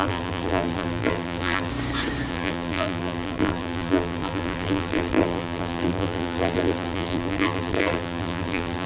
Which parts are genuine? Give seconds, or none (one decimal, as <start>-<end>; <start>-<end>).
1.7-2.3